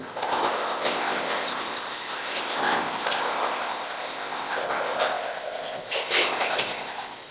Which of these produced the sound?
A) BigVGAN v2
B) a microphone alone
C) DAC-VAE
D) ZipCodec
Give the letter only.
D